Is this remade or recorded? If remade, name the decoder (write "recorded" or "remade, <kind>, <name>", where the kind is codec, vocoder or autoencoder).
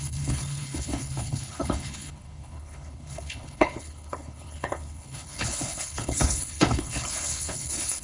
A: remade, codec, HILCodec